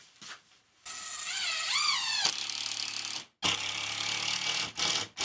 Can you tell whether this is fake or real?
real